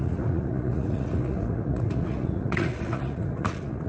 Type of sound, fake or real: fake